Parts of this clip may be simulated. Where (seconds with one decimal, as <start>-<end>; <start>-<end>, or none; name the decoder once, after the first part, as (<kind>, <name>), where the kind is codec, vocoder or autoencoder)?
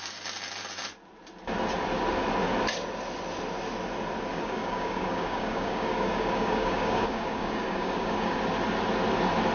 4.3-8.4 (codec, DAC)